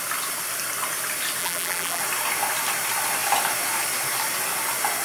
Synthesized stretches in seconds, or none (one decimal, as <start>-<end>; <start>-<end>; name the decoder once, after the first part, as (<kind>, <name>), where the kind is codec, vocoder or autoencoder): 1.4-2.0 (vocoder, BigVGAN v2)